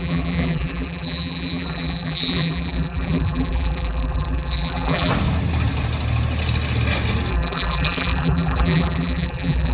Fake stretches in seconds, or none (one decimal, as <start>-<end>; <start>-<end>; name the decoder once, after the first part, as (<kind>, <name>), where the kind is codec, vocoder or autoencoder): 0.0-5.1 (vocoder, BigVGAN v2); 7.3-9.7